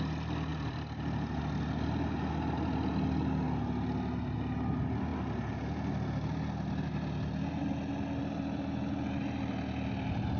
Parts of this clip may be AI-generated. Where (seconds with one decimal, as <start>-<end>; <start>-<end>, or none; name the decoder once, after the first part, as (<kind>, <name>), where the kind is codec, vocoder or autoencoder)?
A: 0.5-1.4 (vocoder, BigVGAN v2); 5.1-6.0